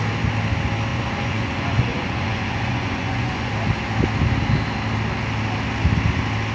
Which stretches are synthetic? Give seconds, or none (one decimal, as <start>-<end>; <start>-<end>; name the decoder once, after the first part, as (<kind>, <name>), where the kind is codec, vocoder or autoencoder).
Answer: 0.9-3.5 (vocoder, Vocos)